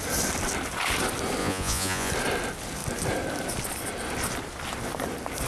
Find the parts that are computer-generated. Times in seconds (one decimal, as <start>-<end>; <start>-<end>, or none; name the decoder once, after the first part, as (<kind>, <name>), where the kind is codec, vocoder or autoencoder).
1.4-2.1 (vocoder, Vocos)